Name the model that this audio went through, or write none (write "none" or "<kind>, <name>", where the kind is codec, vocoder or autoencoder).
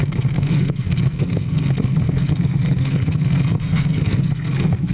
codec, SNAC